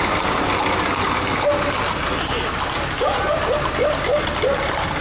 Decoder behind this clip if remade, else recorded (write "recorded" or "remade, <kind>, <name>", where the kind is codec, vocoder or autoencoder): recorded